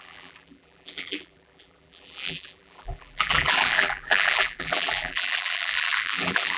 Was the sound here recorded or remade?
remade